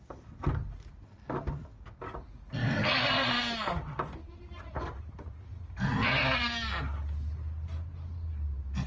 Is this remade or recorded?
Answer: recorded